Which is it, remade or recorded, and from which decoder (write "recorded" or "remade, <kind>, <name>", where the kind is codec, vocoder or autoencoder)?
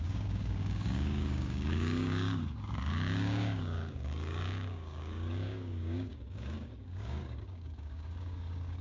remade, codec, DAC